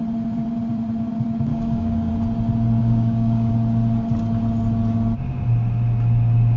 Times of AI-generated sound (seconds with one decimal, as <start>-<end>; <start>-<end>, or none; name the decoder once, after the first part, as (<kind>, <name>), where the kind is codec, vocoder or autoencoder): 1.5-2.1 (codec, DAC); 2.8-3.5